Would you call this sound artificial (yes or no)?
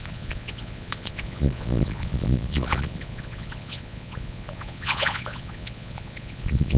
yes